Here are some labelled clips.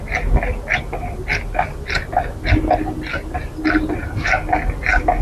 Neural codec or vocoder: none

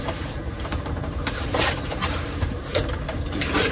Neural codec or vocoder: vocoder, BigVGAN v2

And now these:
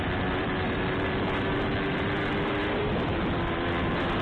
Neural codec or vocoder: vocoder, BigVGAN v2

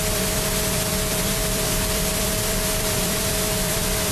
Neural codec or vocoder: vocoder, BigVGAN v2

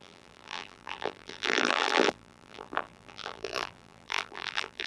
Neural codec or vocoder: vocoder, BigVGAN v2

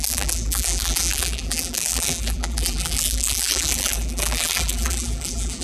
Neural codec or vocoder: vocoder, BigVGAN v2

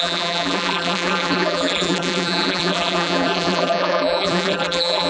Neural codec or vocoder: vocoder, BigVGAN v2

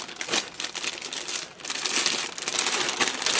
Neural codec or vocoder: none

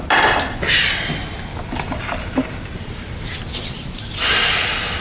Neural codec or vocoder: vocoder, BigVGAN v2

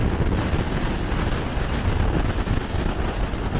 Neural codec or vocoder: none